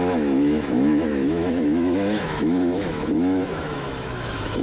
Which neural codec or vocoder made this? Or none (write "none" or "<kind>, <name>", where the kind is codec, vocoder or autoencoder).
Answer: autoencoder, DAC-VAE